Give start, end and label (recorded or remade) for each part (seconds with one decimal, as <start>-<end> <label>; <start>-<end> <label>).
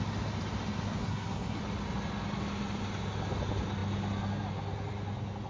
0.0-1.0 recorded; 1.0-1.6 remade; 1.6-5.5 recorded